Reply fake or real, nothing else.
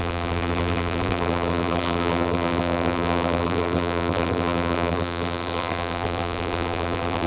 fake